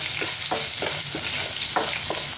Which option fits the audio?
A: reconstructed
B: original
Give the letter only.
B